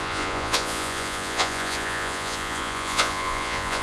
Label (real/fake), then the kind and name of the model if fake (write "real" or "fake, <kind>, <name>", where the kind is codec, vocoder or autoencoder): fake, vocoder, Vocos